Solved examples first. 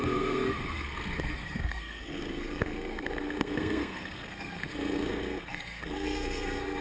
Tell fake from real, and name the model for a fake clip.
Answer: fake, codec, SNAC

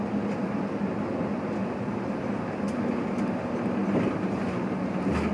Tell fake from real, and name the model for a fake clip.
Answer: real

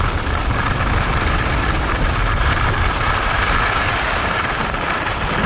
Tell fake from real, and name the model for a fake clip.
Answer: real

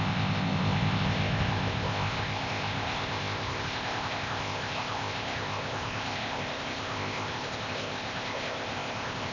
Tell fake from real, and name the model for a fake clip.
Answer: fake, codec, ZipCodec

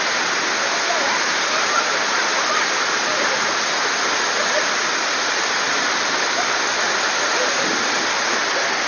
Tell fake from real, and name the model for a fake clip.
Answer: real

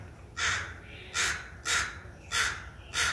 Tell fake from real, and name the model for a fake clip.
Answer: real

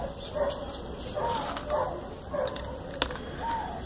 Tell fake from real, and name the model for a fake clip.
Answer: real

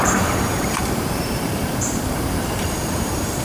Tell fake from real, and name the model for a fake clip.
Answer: fake, vocoder, BigVGAN v2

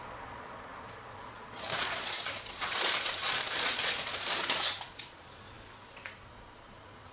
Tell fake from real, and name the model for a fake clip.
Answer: fake, vocoder, Vocos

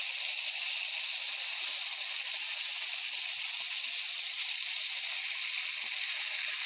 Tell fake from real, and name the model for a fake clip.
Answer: real